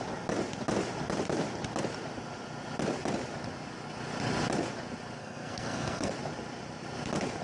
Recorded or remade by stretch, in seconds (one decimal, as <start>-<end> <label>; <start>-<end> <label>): 0.0-5.2 recorded; 5.2-6.1 remade; 6.1-7.4 recorded